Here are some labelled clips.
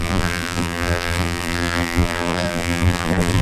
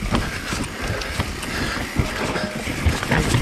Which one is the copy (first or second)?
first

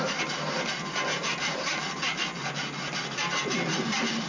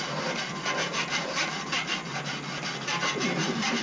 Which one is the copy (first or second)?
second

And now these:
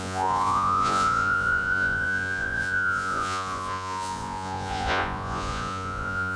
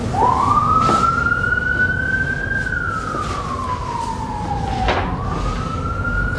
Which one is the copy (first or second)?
first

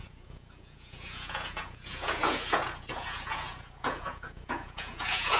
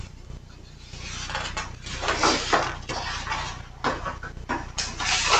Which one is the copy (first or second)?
first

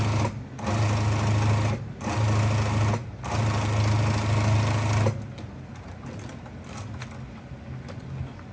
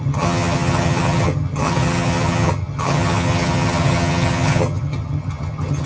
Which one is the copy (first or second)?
second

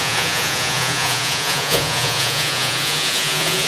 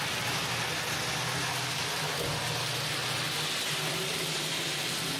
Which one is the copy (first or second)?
first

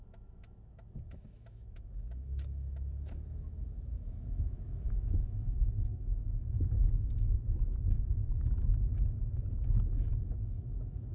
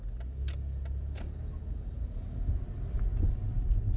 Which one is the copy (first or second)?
first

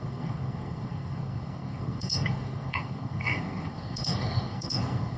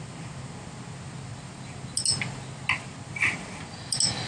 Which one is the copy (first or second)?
first